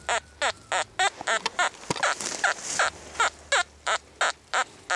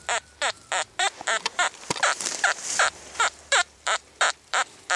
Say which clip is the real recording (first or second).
first